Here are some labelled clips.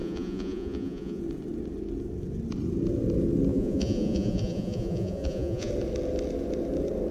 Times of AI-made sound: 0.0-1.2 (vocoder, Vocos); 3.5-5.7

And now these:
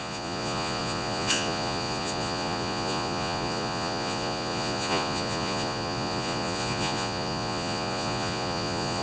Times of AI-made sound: 0.0-9.0 (vocoder, Vocos)

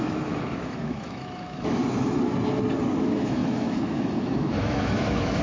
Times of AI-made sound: 0.0-1.8 (autoencoder, DAC-VAE); 3.0-5.4

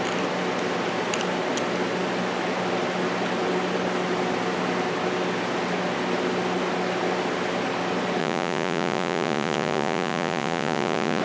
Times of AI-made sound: 8.2-11.2 (vocoder, Vocos)